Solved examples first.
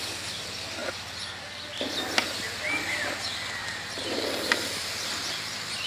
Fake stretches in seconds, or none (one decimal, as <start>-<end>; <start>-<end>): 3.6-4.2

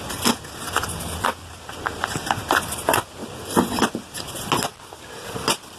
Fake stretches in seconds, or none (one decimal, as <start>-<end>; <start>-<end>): none

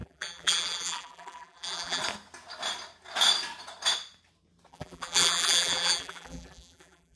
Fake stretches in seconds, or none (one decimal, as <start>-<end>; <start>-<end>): 0.0-2.0; 4.7-7.2

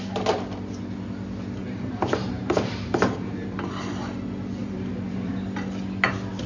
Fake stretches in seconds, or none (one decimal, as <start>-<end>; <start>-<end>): 1.6-3.7; 4.6-5.3

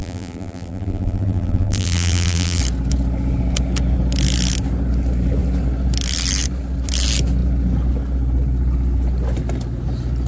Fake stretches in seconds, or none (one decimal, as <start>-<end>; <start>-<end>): 0.0-2.6